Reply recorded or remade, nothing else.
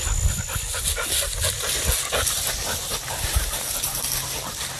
recorded